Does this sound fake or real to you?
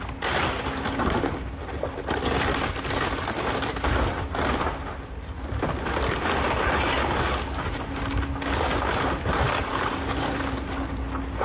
real